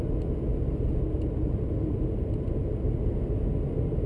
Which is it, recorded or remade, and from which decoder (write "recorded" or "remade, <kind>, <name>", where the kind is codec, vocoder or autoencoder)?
recorded